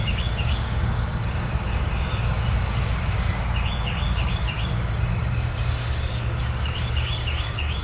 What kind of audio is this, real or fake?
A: fake